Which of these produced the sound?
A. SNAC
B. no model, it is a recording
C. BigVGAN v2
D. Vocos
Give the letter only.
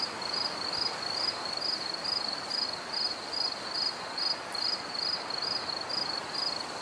B